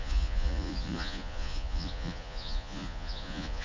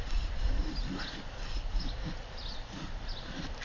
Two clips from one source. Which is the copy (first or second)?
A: first